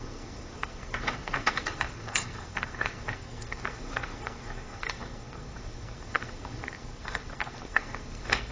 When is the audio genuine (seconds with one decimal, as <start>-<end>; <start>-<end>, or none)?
none